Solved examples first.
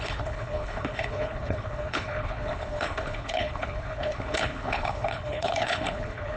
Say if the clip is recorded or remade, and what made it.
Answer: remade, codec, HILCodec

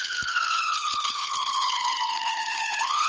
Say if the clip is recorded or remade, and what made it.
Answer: remade, codec, HILCodec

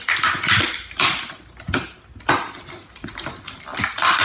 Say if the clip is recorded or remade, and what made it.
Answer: recorded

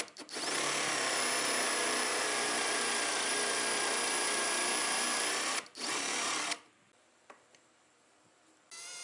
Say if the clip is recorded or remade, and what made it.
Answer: recorded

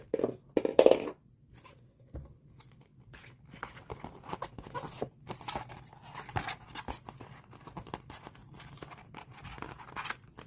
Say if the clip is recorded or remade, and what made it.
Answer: recorded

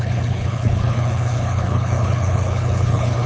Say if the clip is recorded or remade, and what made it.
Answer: remade, codec, HILCodec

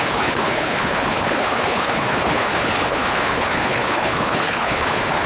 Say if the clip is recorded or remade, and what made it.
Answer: remade, codec, HILCodec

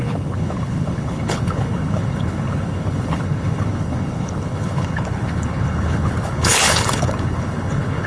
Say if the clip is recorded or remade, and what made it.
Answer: remade, codec, HILCodec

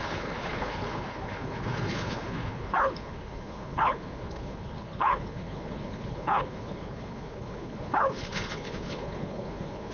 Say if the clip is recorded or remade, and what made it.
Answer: remade, codec, HILCodec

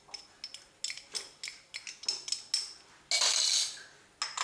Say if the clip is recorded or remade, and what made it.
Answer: recorded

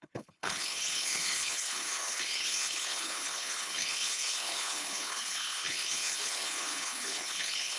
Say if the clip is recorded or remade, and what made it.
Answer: remade, codec, HILCodec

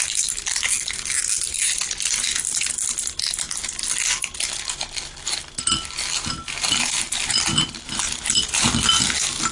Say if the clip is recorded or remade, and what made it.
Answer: recorded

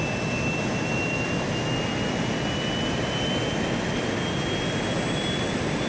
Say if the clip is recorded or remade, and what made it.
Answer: recorded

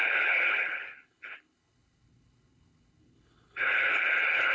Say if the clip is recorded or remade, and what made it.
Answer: remade, codec, HILCodec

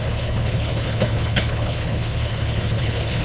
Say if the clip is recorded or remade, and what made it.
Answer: remade, codec, HILCodec